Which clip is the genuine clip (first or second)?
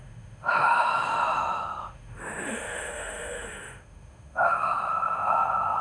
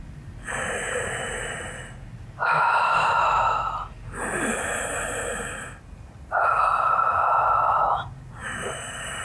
second